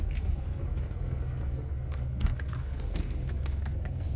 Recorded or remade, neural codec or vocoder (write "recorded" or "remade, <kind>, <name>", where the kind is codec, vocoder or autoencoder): remade, codec, SNAC